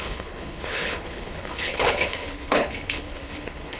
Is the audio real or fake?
fake